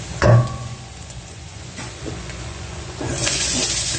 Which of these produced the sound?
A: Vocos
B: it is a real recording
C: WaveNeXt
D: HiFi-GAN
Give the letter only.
A